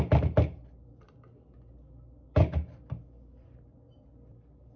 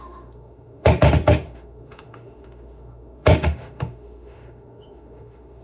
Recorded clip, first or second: first